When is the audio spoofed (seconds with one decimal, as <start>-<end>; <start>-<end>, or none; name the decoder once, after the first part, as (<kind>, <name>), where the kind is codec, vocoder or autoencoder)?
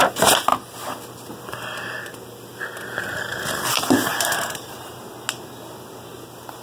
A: 4.1-5.0 (vocoder, BigVGAN v2)